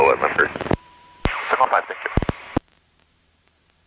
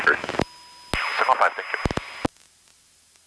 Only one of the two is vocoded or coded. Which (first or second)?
first